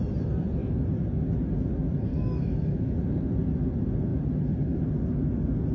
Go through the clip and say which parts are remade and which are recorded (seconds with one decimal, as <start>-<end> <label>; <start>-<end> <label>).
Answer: 0.0-2.1 recorded; 2.1-3.0 remade; 3.0-5.7 recorded

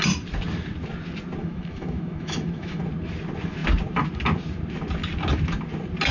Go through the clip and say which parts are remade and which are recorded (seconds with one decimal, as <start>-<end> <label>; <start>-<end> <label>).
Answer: 0.0-1.4 recorded; 1.4-2.8 remade; 2.8-6.1 recorded

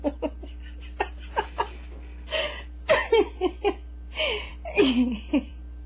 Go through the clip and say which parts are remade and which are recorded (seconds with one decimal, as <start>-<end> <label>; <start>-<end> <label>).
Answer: 0.0-5.9 recorded

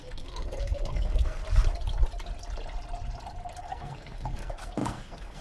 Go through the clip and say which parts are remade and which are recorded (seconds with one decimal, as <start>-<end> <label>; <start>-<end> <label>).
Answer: 0.0-1.4 remade; 1.4-3.6 recorded; 3.6-5.4 remade